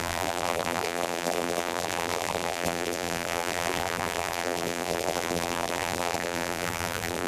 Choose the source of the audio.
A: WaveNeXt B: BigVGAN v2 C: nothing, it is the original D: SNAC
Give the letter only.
B